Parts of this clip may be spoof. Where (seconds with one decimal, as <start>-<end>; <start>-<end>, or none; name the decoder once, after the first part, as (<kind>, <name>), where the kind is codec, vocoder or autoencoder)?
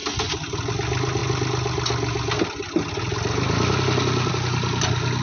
none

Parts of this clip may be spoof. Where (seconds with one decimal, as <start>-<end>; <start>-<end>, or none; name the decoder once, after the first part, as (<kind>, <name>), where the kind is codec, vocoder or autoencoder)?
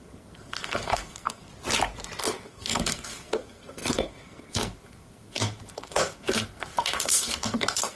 0.0-1.5 (codec, SNAC); 2.2-8.0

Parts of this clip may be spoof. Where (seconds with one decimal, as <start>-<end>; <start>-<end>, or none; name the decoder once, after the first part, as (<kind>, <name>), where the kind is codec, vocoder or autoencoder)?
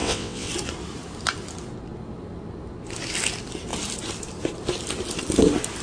0.0-0.5 (vocoder, WaveNeXt)